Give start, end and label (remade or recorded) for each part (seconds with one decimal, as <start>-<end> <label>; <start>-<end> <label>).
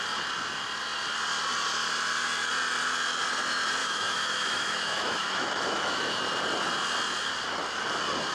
0.0-3.8 recorded; 3.8-6.2 remade; 6.2-8.3 recorded